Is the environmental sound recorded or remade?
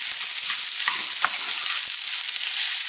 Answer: recorded